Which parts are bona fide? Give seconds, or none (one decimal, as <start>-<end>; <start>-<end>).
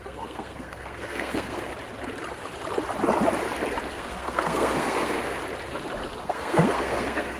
1.7-3.9; 5.4-6.2